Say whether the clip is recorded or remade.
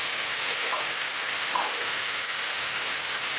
remade